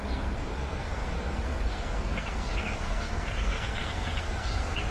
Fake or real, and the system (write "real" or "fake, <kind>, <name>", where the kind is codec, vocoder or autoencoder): fake, codec, SNAC